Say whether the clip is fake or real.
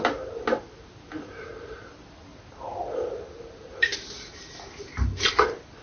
real